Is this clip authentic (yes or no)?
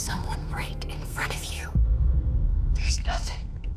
no